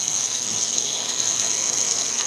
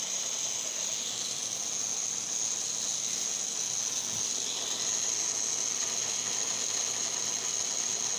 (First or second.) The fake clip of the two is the first